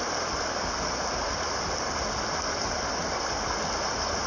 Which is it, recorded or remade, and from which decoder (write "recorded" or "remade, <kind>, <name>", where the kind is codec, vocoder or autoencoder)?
recorded